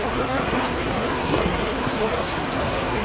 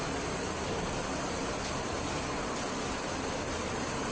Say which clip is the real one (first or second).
second